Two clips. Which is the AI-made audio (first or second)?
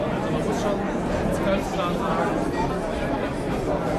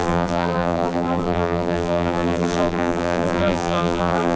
second